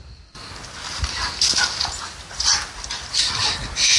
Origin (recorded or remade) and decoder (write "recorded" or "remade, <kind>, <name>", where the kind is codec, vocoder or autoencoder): recorded